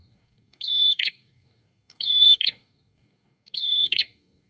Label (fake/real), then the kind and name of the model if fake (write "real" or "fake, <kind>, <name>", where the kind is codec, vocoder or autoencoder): fake, codec, DAC